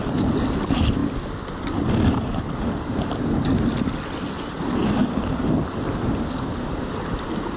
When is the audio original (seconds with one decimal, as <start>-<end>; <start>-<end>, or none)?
0.0-7.6